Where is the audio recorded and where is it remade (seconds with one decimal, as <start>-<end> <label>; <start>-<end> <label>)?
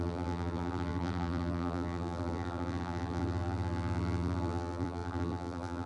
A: 0.0-5.9 remade